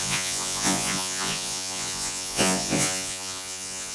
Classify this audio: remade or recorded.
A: remade